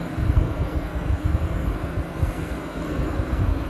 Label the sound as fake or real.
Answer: fake